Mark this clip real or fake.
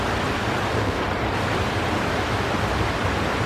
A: real